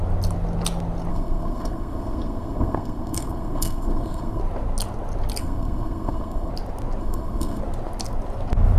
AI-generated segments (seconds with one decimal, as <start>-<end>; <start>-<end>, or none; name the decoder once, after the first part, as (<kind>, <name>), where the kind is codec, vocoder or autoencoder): 1.1-4.4 (codec, SNAC); 5.4-6.5; 7.0-7.6